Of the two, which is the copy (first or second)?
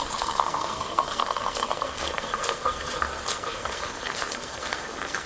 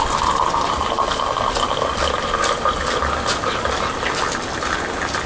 first